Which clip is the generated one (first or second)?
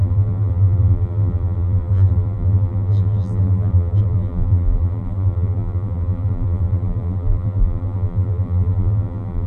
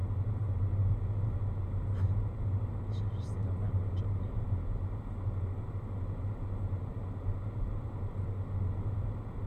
first